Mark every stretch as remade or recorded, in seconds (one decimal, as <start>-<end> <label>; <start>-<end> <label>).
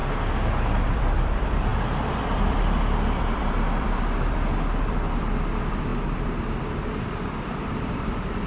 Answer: 0.0-0.8 recorded; 0.8-8.5 remade